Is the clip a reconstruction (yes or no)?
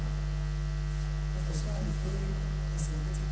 no